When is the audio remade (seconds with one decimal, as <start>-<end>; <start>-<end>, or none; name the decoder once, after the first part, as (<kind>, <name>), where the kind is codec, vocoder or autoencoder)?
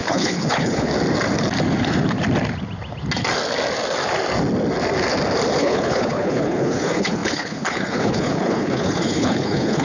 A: 0.0-0.9 (codec, HILCodec); 5.6-9.8